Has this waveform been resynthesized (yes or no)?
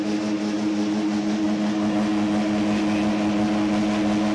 no